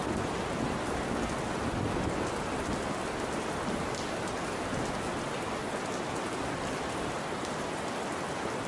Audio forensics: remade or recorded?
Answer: recorded